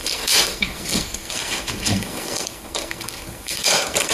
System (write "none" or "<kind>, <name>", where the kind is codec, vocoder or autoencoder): codec, SNAC